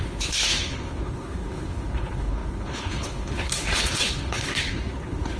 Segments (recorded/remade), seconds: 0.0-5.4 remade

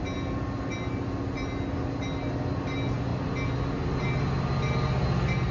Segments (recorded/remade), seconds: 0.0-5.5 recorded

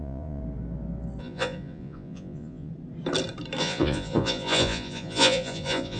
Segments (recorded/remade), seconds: 0.0-0.4 remade; 0.4-1.2 recorded; 1.2-2.7 remade; 2.7-3.6 recorded; 3.6-6.0 remade